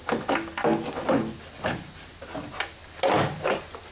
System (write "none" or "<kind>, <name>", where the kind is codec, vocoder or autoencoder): none